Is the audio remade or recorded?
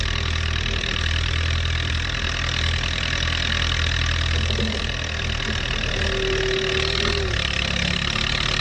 recorded